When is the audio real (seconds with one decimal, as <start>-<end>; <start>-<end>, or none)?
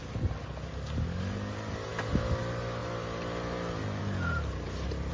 0.0-5.1